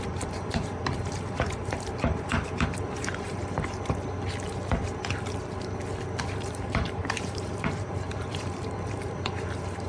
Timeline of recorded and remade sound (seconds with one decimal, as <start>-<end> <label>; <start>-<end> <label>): 0.0-3.4 remade; 3.4-6.2 recorded; 6.2-9.9 remade